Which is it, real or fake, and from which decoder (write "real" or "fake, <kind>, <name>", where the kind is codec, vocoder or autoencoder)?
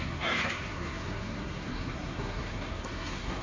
fake, codec, SNAC